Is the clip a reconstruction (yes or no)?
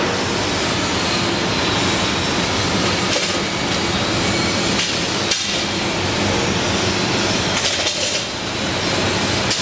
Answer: no